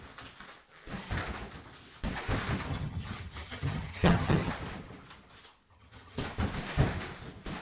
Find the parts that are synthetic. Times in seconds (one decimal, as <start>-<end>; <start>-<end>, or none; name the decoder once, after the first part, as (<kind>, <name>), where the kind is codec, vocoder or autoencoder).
2.7-4.5 (vocoder, HiFi-GAN); 5.7-6.2